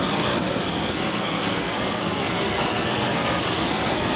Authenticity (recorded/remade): remade